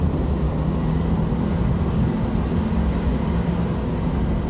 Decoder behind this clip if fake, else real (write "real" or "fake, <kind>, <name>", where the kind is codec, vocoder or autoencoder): real